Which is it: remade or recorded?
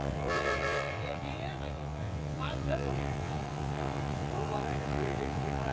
remade